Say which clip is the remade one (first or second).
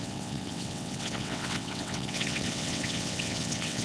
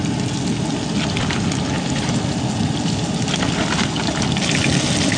first